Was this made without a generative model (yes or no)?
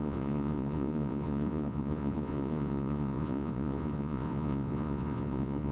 no